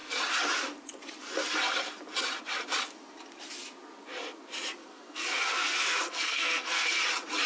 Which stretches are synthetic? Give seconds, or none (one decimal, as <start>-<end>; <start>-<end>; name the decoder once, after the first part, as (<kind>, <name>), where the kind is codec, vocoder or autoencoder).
4.8-7.0 (codec, SNAC)